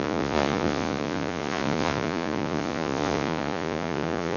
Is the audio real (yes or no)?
no